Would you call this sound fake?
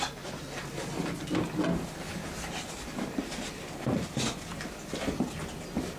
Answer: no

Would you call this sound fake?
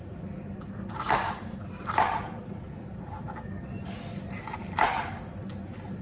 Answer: no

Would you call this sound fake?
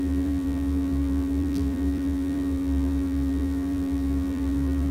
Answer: yes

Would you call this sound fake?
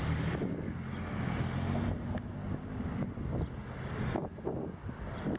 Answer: no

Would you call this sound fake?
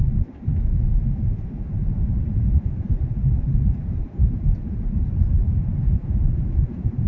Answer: yes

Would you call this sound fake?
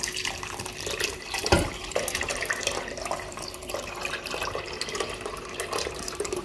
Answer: yes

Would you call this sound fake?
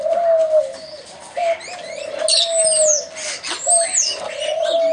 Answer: no